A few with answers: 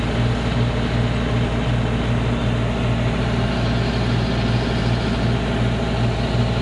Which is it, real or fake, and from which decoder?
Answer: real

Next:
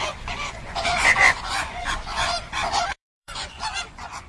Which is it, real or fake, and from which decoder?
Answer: fake, vocoder, Vocos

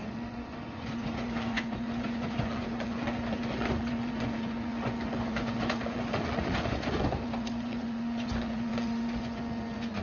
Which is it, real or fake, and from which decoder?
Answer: fake, vocoder, Vocos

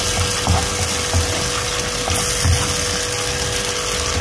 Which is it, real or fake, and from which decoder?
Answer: real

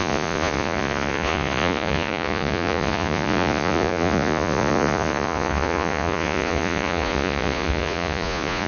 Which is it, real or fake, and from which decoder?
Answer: fake, vocoder, Vocos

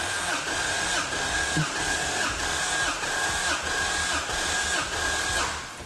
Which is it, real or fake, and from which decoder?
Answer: real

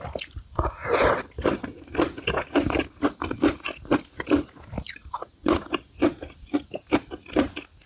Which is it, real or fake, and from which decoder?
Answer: real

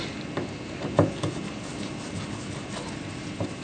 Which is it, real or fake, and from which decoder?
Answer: real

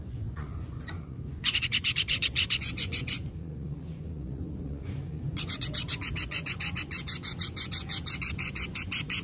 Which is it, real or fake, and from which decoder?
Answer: fake, vocoder, Vocos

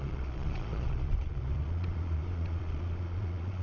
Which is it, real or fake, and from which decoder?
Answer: fake, vocoder, Vocos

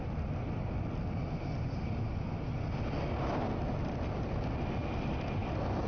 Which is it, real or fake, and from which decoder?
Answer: real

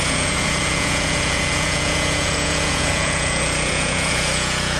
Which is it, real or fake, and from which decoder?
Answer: fake, vocoder, Vocos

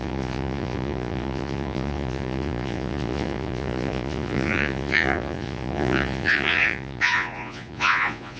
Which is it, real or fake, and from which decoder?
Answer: fake, vocoder, Vocos